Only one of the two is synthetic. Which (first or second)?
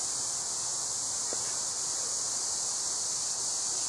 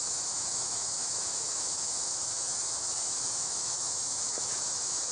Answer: second